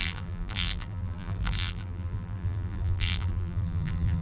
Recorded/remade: remade